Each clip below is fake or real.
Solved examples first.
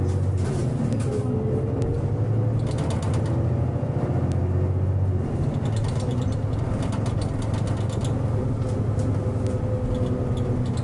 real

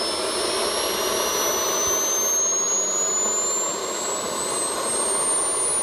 real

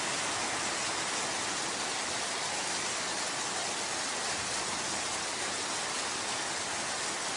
real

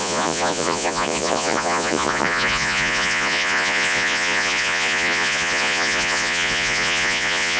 fake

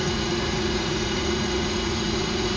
fake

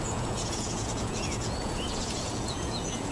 fake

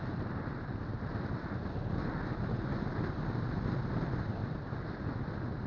real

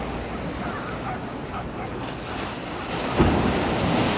real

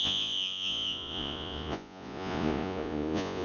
fake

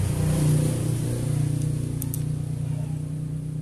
real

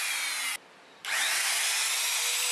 real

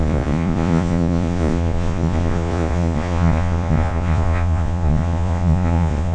fake